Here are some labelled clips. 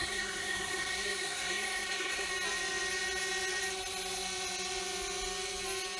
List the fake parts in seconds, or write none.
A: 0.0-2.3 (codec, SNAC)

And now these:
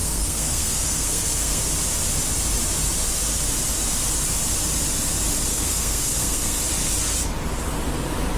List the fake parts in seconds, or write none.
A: 0.0-1.6 (codec, SNAC); 5.5-6.6

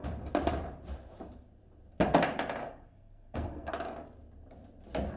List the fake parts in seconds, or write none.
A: 2.6-3.7 (codec, SNAC)

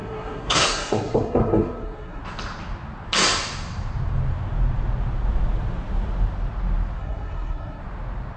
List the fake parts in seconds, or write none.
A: 0.0-2.2 (codec, SNAC); 7.0-7.8

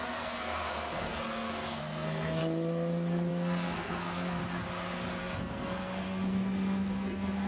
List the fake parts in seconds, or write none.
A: 0.0-2.4 (codec, SNAC); 3.3-4.4; 5.2-7.5

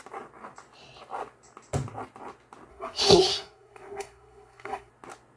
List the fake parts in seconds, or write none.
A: 2.7-4.9 (codec, SNAC)